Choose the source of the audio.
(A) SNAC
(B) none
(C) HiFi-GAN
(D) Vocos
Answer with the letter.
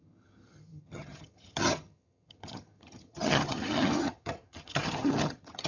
C